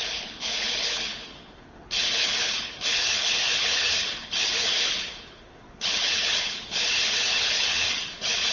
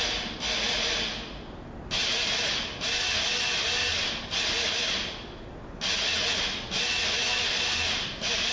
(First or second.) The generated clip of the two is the first